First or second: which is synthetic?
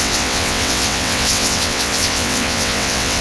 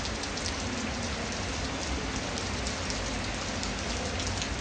first